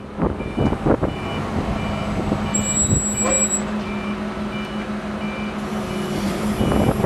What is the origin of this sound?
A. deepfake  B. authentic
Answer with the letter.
B